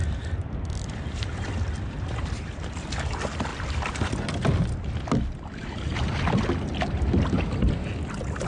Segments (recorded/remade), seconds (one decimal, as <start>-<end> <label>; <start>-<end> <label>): 0.0-2.8 remade; 2.8-3.5 recorded; 3.5-4.9 remade; 4.9-8.5 recorded